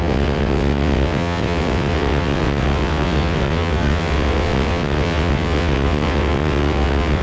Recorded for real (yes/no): no